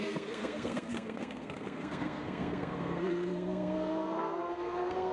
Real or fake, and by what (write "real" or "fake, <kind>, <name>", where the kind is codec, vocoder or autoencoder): fake, codec, SNAC